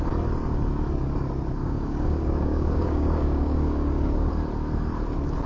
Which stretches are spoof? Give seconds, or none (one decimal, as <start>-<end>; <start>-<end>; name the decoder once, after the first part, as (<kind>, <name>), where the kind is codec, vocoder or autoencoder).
1.6-4.3 (codec, DAC)